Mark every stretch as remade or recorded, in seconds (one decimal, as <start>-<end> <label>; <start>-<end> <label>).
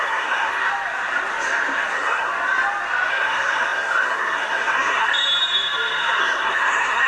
0.0-0.5 remade; 0.5-1.9 recorded; 1.9-2.3 remade; 2.3-3.1 recorded; 3.1-5.1 remade; 5.1-6.2 recorded; 6.2-7.1 remade